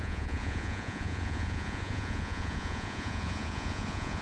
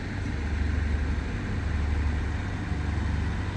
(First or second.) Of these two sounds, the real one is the second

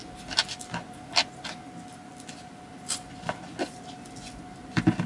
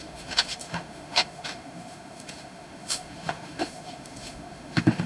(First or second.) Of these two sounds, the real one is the first